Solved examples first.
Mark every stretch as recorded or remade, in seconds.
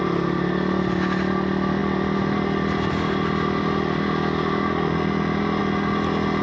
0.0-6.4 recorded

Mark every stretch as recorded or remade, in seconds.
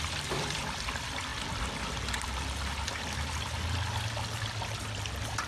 0.0-1.3 remade; 1.3-4.6 recorded; 4.6-5.5 remade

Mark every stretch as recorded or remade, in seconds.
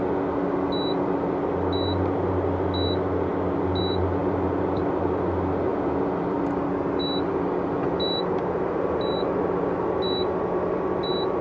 0.0-4.2 recorded; 4.2-5.0 remade; 5.0-5.7 recorded; 5.7-7.0 remade; 7.0-11.4 recorded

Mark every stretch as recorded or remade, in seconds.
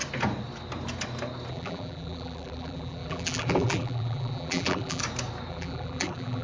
0.0-1.5 recorded; 1.5-5.0 remade; 5.0-5.5 recorded; 5.5-6.4 remade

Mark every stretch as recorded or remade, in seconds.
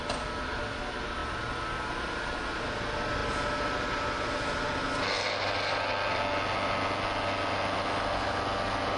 0.0-9.0 recorded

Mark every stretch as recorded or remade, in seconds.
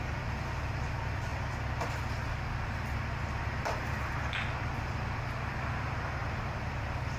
0.0-7.2 recorded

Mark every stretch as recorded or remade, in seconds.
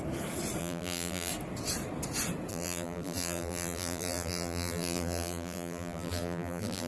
0.0-0.6 recorded; 0.6-1.3 remade; 1.3-2.5 recorded; 2.5-6.9 remade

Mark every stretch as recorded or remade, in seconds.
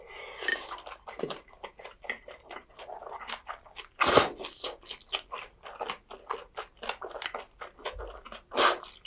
0.0-0.5 recorded; 0.5-2.8 remade; 2.8-9.1 recorded